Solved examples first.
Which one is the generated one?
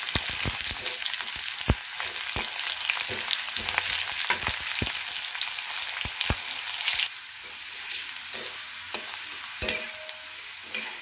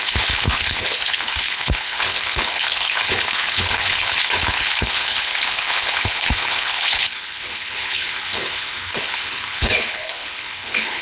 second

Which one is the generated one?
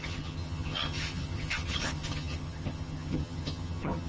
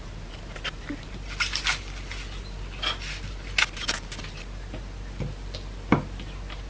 first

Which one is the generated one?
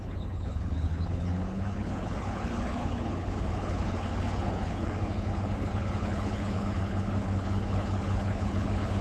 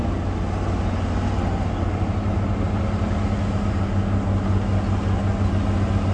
first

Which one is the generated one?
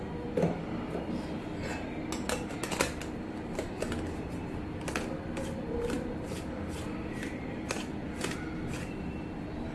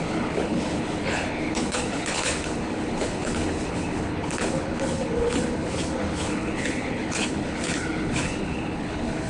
second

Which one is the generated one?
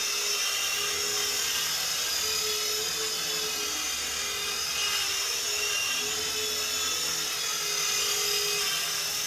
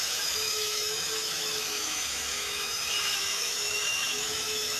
second